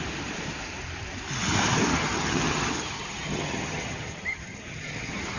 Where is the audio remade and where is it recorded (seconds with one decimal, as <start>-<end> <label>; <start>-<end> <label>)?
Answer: 0.0-1.9 recorded; 1.9-5.4 remade